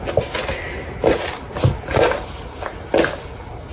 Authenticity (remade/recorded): recorded